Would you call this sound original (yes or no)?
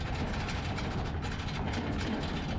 yes